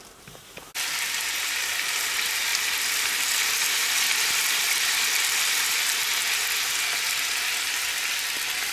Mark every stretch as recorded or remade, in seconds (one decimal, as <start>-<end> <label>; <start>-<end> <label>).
0.0-8.7 recorded